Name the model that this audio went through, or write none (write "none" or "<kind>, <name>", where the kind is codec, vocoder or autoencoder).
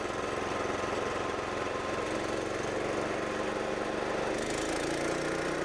none